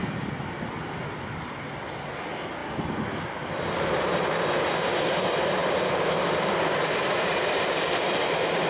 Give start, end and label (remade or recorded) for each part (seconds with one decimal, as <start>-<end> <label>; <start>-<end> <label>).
0.0-5.6 recorded; 5.6-7.5 remade; 7.5-8.7 recorded